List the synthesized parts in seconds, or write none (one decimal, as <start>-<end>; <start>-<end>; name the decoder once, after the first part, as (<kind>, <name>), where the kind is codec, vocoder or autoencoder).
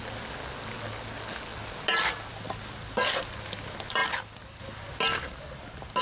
none